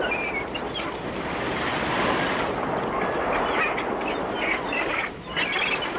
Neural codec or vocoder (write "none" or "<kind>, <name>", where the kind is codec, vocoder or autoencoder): vocoder, BigVGAN v2